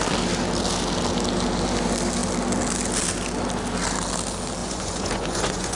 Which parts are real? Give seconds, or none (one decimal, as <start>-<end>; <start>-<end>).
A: 0.0-4.6